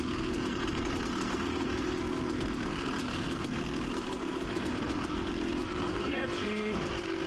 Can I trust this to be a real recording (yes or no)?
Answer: no